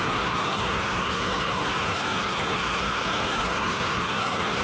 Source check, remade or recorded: remade